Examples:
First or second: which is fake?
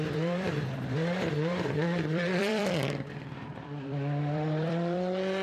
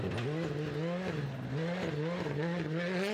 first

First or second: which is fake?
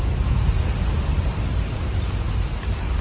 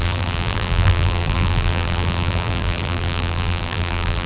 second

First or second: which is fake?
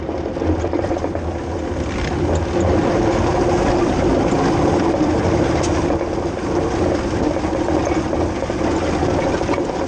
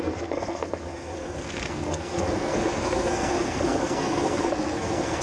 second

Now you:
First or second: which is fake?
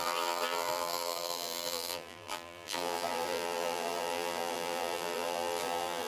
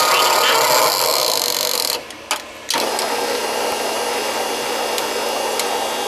first